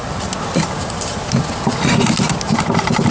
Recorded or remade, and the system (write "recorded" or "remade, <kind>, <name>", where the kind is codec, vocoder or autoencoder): recorded